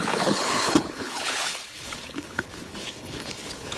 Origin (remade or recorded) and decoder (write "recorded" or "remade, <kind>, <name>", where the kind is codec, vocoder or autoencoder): remade, codec, HILCodec